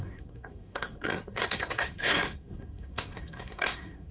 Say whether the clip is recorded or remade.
remade